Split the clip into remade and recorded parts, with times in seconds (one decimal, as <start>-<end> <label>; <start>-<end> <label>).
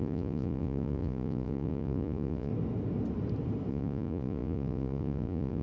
0.0-2.5 remade; 2.5-3.7 recorded; 3.7-5.6 remade